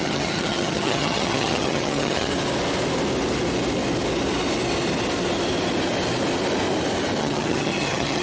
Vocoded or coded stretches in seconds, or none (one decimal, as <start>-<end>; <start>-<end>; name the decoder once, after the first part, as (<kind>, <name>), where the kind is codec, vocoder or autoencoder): 0.0-2.3 (vocoder, HiFi-GAN); 7.2-8.2